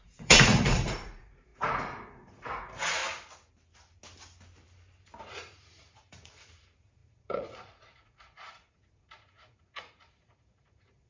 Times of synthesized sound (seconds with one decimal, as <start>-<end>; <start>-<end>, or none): 0.0-3.0; 5.3-11.1